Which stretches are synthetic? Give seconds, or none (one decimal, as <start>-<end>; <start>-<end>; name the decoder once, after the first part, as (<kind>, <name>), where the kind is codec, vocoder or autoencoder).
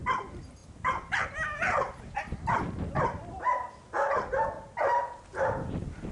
0.6-1.6 (vocoder, BigVGAN v2)